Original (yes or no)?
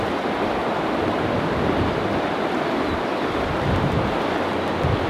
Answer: yes